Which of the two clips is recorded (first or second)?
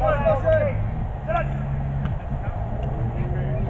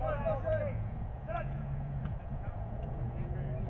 first